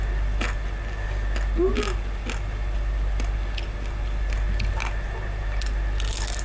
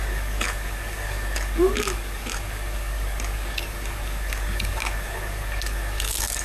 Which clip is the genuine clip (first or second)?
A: first